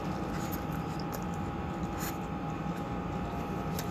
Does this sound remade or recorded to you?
recorded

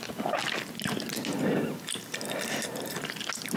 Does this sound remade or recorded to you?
recorded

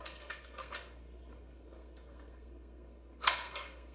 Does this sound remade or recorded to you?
remade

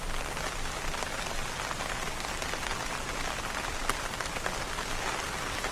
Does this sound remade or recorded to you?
recorded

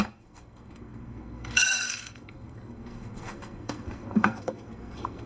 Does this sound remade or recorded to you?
remade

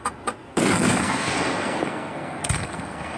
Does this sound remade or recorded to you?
remade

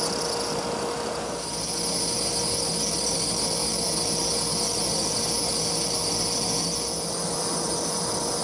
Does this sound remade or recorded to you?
recorded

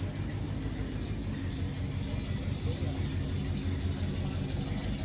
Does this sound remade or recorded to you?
recorded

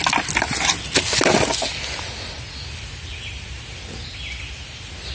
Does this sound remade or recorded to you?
recorded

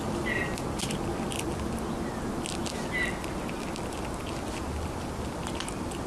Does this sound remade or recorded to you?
recorded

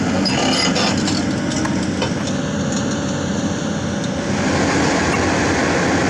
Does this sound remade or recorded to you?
recorded